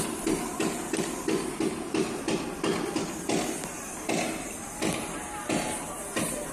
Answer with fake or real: real